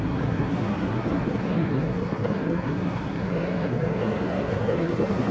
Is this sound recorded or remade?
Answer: remade